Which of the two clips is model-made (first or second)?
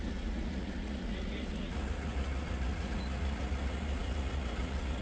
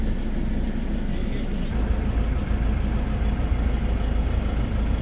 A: first